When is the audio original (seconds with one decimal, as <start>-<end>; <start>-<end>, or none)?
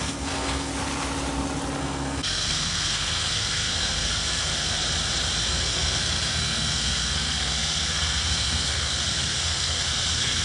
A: 0.7-1.8; 4.5-5.5